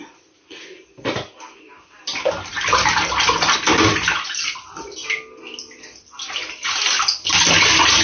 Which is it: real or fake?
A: real